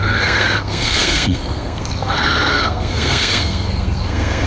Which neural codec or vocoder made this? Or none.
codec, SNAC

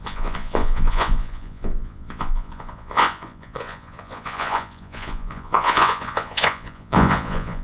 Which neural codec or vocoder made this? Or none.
vocoder, Vocos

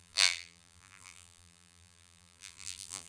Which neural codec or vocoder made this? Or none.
vocoder, BigVGAN v2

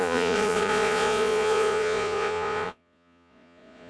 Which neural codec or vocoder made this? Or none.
vocoder, Vocos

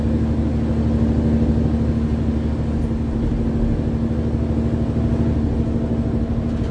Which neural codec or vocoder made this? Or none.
none